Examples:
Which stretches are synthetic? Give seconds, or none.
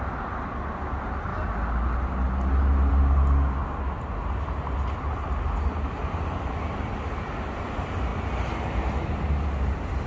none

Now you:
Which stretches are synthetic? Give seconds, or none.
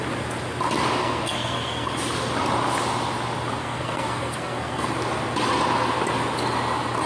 1.0-1.9 (codec, SNAC); 3.6-4.9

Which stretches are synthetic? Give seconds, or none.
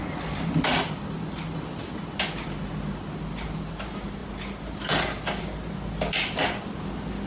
none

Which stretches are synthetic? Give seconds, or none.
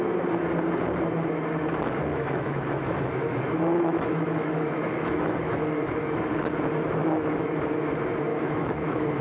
2.1-5.9 (autoencoder, DAC-VAE); 7.0-7.6; 8.3-9.2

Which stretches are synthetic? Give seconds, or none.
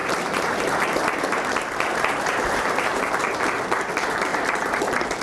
0.0-3.1 (vocoder, BigVGAN v2); 4.3-4.8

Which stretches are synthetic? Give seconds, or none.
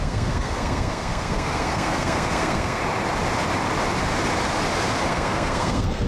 0.0-2.8 (codec, SNAC); 5.1-6.1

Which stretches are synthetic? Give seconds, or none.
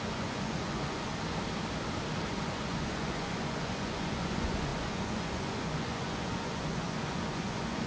0.0-1.1 (vocoder, Vocos); 2.3-7.9